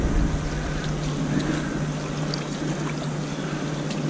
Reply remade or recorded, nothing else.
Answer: recorded